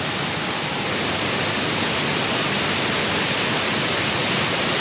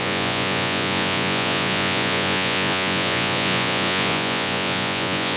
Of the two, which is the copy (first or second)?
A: second